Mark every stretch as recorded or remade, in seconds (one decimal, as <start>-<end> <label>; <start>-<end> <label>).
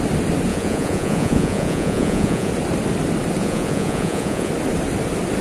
0.0-0.5 recorded; 0.5-2.5 remade; 2.5-3.4 recorded; 3.4-4.5 remade; 4.5-5.4 recorded